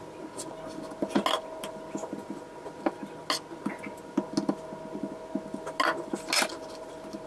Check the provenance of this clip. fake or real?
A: real